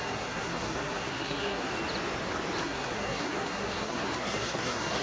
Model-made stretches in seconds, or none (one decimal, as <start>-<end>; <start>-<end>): 0.0-1.7; 2.6-5.0